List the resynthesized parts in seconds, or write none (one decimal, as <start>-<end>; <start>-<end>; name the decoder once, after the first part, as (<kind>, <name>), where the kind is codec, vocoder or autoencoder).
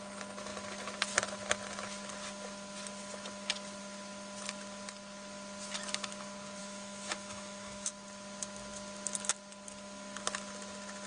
6.6-7.9 (autoencoder, DAC-VAE)